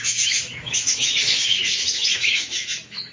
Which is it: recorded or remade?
remade